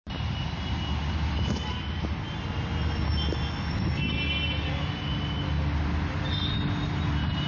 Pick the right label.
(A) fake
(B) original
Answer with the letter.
B